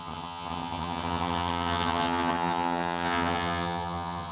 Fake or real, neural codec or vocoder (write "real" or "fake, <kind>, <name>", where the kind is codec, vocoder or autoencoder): fake, vocoder, HiFi-GAN